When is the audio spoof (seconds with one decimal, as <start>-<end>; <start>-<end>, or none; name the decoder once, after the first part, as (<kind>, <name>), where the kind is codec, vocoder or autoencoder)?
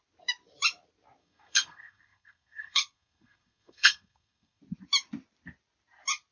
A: 1.2-4.6 (codec, SNAC)